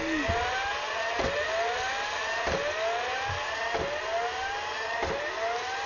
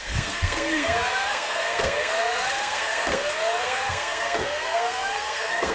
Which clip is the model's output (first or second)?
second